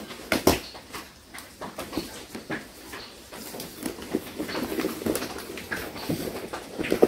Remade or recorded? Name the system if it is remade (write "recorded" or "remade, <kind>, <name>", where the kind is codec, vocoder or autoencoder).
recorded